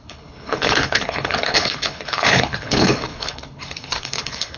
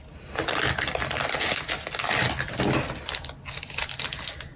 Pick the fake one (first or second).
first